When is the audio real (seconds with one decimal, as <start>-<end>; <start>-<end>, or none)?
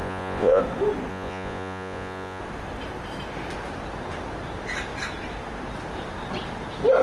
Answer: 0.6-1.1; 2.4-7.0